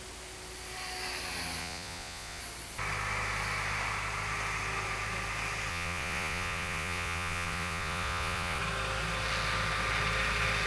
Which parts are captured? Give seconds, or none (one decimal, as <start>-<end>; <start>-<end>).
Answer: 0.0-1.6; 2.4-5.7; 8.6-10.7